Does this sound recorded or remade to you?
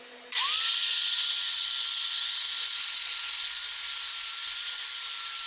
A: recorded